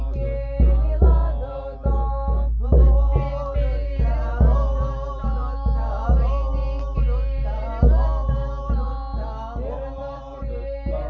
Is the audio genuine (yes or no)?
yes